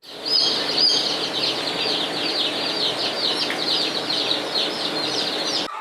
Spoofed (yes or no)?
no